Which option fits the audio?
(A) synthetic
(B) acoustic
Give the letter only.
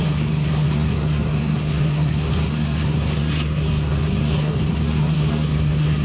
A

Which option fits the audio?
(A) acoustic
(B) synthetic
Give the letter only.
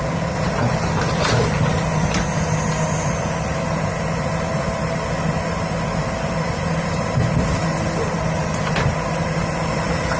A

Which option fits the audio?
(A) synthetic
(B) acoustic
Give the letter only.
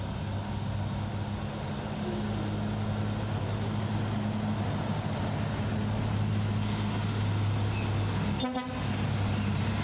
B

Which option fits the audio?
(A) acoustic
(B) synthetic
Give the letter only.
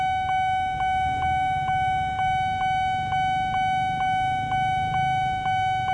A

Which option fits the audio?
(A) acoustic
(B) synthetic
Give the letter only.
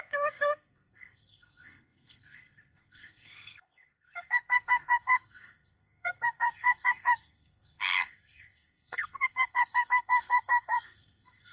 B